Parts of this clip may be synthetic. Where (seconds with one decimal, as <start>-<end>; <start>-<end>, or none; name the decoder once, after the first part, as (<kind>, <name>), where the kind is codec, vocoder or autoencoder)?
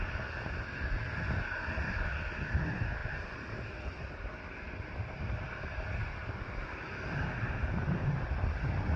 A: 3.0-7.5 (vocoder, BigVGAN v2)